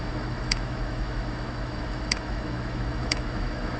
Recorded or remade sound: remade